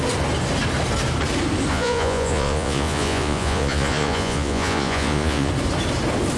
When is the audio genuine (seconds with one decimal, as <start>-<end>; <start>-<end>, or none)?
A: 0.0-1.7; 5.5-6.4